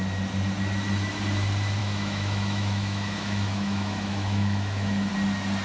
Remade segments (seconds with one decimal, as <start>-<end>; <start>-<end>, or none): 1.8-5.1

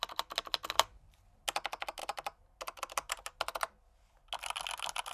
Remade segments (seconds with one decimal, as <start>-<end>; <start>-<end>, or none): none